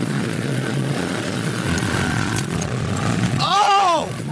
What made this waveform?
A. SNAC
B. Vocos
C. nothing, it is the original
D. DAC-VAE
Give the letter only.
B